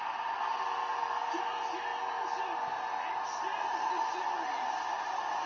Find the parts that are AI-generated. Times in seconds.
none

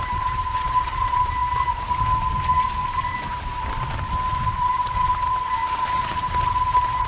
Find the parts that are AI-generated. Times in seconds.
0.0-1.4 (vocoder, BigVGAN v2); 4.4-7.1